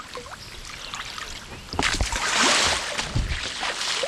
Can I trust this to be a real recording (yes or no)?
yes